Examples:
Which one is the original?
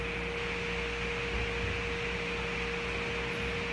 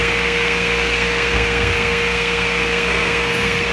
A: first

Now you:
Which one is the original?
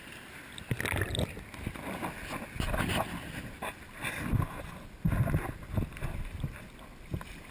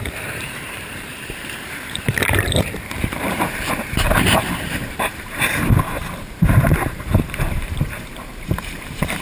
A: first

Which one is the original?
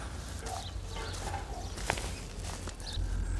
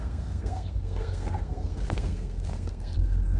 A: first